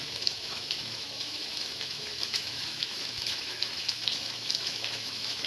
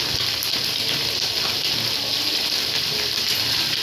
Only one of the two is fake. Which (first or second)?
first